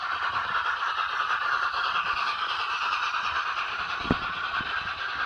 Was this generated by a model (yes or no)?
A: yes